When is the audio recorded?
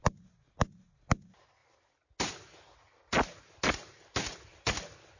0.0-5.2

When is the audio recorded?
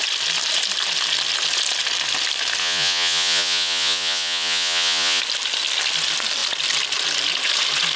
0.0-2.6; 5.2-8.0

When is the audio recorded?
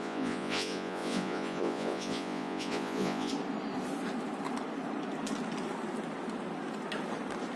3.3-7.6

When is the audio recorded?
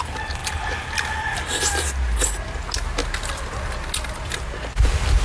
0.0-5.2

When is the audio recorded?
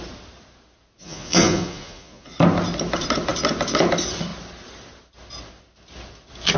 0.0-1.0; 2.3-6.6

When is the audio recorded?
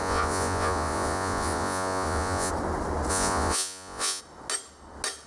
2.5-3.1; 4.2-5.3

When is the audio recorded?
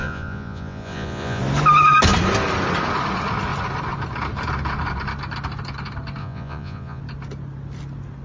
1.4-6.2; 7.0-8.2